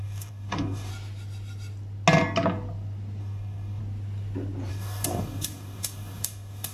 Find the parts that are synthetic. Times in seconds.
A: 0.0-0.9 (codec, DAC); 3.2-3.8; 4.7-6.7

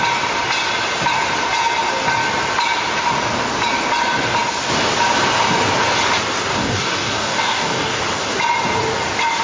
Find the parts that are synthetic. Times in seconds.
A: 6.5-8.0 (codec, DAC)

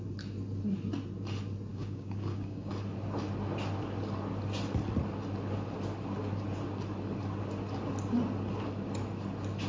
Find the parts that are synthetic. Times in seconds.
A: 1.7-2.7 (codec, DAC)